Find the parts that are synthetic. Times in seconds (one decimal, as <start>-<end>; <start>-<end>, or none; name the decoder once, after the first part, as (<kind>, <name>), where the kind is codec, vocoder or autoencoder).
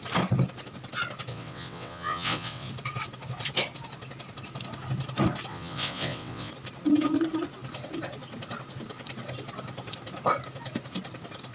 1.3-2.7 (vocoder, WaveNeXt); 5.5-6.5